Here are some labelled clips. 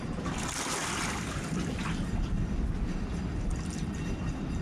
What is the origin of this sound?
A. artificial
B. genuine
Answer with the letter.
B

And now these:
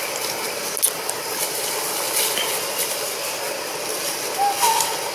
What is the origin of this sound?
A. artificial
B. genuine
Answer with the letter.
B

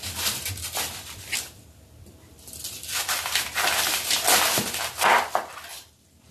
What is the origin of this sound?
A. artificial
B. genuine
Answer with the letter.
B